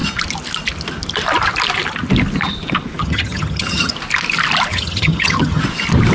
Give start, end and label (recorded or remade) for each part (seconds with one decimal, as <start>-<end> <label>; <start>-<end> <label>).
0.0-3.0 recorded; 3.0-3.9 remade; 3.9-4.7 recorded; 4.7-5.6 remade; 5.6-6.1 recorded